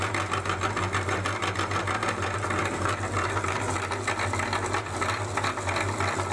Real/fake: real